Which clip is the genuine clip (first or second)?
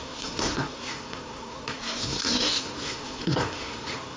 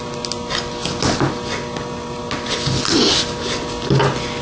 second